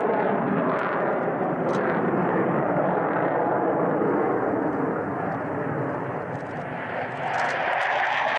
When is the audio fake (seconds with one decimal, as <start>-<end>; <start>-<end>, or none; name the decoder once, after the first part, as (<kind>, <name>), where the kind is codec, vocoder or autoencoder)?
1.4-3.0 (vocoder, BigVGAN v2)